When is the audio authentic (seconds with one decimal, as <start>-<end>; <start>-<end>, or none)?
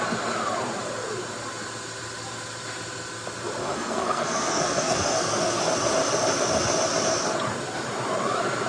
0.0-3.6; 5.6-8.7